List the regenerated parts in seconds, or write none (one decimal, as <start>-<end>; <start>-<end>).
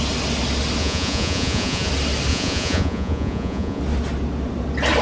0.8-1.9; 2.3-3.8